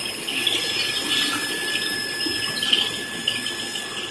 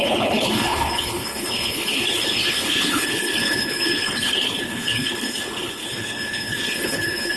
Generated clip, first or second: second